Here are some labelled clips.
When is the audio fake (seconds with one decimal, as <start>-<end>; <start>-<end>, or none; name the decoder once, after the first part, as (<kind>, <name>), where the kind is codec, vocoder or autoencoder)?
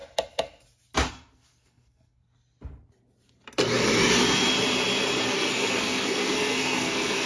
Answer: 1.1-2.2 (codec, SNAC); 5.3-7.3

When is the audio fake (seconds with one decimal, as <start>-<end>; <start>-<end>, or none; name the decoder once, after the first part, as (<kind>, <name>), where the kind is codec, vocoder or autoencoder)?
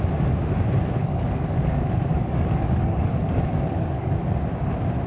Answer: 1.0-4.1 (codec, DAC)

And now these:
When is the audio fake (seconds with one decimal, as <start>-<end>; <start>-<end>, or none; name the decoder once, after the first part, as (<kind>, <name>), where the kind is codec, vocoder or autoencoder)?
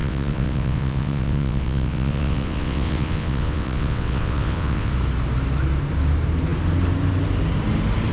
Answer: 0.0-4.9 (vocoder, WaveNeXt)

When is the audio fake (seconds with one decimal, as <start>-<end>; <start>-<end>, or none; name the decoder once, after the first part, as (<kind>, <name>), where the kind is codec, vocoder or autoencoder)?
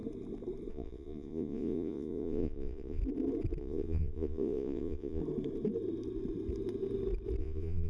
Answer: 0.7-3.0 (vocoder, Vocos); 3.6-5.2; 7.4-7.9